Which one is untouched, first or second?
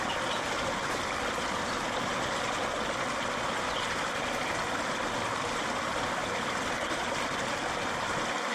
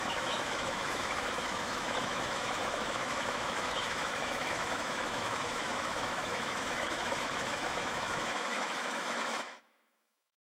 first